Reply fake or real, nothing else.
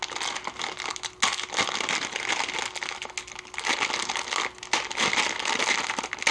real